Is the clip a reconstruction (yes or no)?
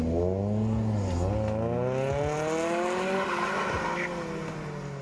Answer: no